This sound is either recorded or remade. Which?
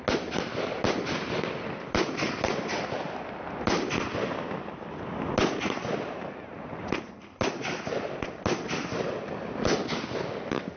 recorded